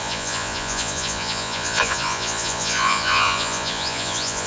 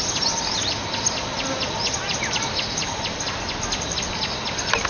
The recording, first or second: second